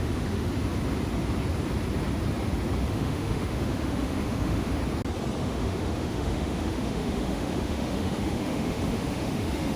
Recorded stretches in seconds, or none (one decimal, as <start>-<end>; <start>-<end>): 0.5-2.9; 4.8-5.4